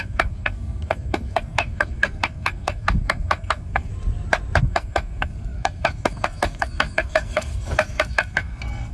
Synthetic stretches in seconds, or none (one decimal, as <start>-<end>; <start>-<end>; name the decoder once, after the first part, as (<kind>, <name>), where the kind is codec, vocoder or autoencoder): 0.0-3.9 (codec, SNAC); 4.6-8.9